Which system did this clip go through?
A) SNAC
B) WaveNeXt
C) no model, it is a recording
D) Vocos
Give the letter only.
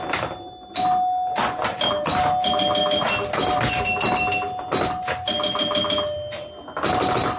C